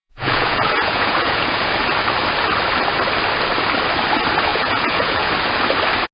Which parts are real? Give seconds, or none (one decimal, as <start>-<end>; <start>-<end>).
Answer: 1.7-4.5; 5.3-6.1